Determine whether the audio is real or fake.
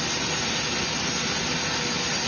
real